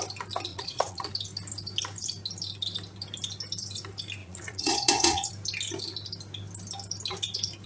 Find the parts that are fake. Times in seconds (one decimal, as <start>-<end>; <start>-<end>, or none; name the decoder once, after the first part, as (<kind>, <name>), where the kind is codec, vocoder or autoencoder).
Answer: 0.5-1.1 (vocoder, Vocos); 4.2-5.3